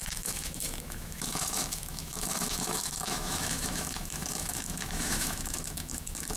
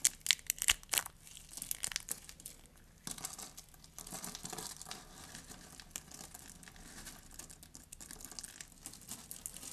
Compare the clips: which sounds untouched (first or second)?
second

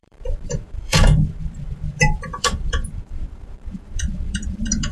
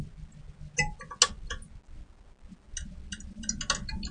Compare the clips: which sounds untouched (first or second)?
second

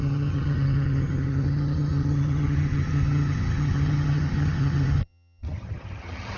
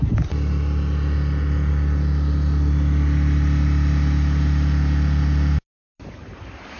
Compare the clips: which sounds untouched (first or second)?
second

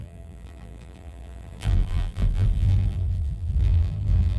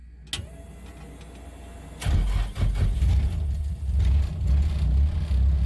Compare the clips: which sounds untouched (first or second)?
second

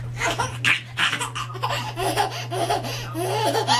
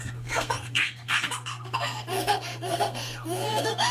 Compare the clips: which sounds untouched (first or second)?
first